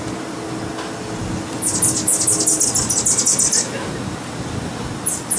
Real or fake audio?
real